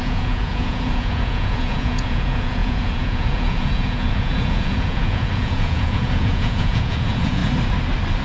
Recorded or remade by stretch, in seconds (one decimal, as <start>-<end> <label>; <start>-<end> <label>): 0.0-7.4 remade; 7.4-8.2 recorded